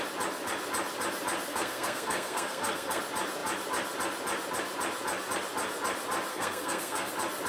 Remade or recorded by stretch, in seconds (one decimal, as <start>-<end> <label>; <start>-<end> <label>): 0.0-1.5 recorded; 1.5-3.0 remade; 3.0-6.3 recorded; 6.3-7.1 remade; 7.1-7.5 recorded